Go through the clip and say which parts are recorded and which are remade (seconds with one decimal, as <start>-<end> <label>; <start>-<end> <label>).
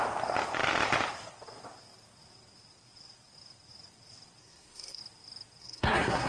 0.0-4.4 recorded; 4.4-5.0 remade; 5.0-5.6 recorded; 5.6-6.3 remade